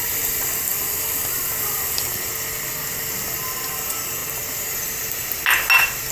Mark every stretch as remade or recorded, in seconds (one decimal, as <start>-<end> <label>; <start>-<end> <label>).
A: 0.0-4.2 recorded; 4.2-4.8 remade; 4.8-6.1 recorded